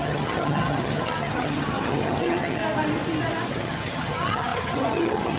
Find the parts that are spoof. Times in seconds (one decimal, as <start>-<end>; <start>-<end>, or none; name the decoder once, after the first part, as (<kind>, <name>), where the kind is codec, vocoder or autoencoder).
0.0-2.6 (vocoder, HiFi-GAN); 3.5-5.4